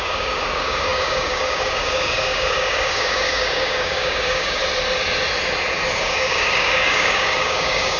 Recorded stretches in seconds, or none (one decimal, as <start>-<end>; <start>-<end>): 4.6-6.0